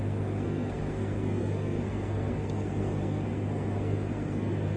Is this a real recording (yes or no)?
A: no